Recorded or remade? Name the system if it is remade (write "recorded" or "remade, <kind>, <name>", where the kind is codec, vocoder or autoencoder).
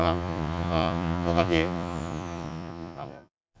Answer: remade, vocoder, Vocos